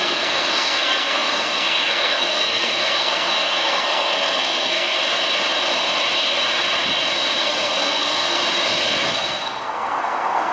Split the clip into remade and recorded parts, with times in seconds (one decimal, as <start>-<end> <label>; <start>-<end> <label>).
0.0-5.0 remade; 5.0-7.4 recorded; 7.4-8.4 remade; 8.4-9.1 recorded; 9.1-10.5 remade